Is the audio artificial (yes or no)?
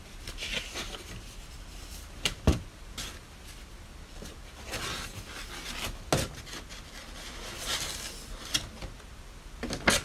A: no